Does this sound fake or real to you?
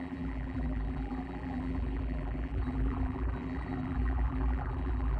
fake